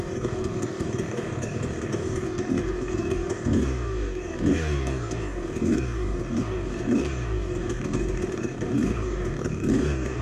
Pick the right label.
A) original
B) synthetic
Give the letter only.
B